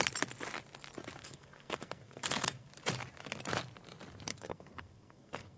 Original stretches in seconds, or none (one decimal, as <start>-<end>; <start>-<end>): 0.0-1.2; 2.7-4.3